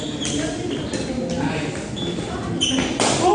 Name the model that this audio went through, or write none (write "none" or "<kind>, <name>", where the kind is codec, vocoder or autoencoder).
none